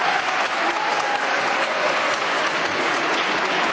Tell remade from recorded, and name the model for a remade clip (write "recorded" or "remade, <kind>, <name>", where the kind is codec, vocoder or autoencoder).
remade, vocoder, Vocos